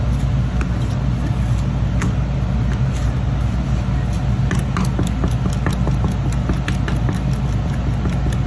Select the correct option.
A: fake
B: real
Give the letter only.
B